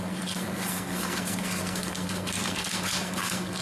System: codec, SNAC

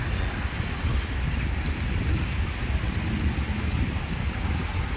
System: none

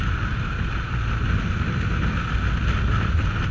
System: none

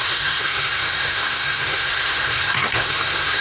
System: codec, SNAC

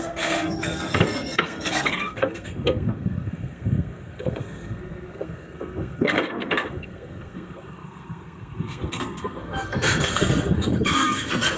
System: codec, SNAC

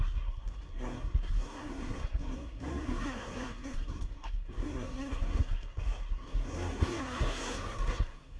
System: codec, SNAC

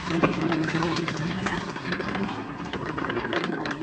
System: codec, SNAC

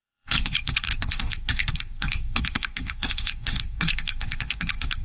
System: codec, SNAC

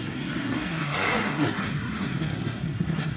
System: codec, SNAC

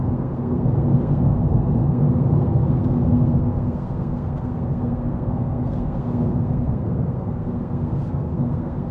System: codec, SNAC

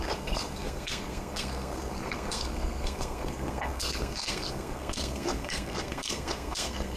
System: codec, SNAC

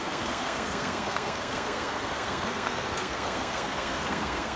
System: codec, SNAC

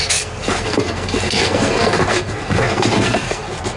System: codec, SNAC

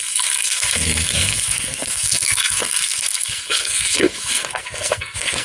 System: codec, SNAC